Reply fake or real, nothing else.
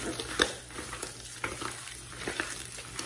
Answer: real